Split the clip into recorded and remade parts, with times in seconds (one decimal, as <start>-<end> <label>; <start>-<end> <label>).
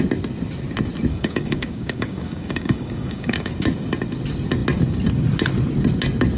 0.0-1.1 recorded; 1.1-3.5 remade; 3.5-6.4 recorded